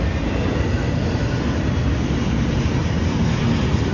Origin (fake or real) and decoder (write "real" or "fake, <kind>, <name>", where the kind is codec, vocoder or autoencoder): real